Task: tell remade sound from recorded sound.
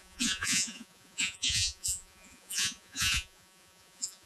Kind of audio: remade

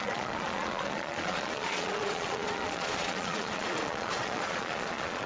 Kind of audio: remade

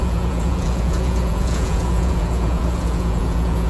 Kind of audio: remade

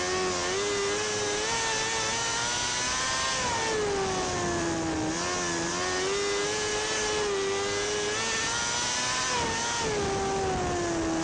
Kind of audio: recorded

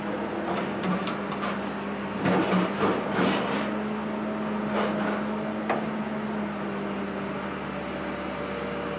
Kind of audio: recorded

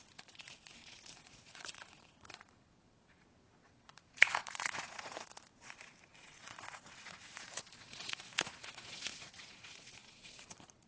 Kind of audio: remade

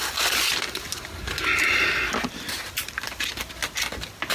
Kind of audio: recorded